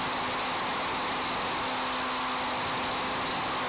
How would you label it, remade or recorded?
recorded